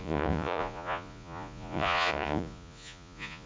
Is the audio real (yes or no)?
no